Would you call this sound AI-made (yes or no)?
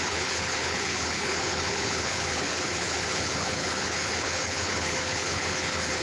yes